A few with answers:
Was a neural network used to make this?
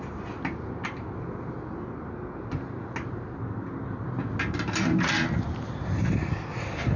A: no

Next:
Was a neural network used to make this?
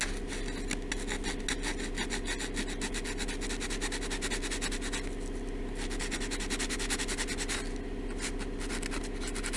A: no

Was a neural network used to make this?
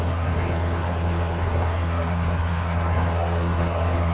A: yes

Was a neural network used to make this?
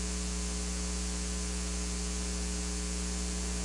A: no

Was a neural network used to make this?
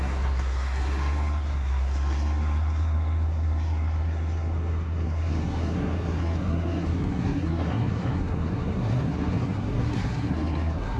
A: yes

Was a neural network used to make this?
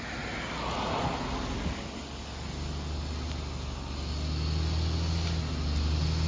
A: no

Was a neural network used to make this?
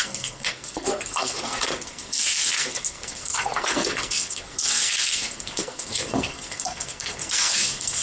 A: yes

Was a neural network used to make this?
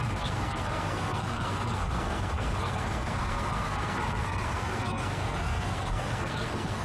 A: yes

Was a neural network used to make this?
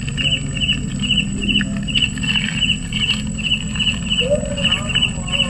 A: no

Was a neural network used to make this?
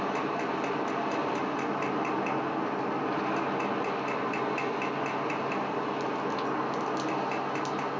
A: no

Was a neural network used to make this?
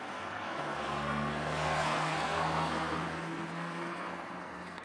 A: yes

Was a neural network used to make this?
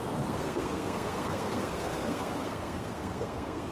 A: yes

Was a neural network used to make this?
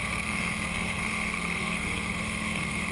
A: yes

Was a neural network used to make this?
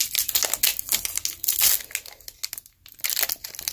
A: no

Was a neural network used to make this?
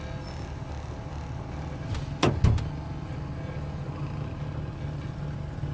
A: no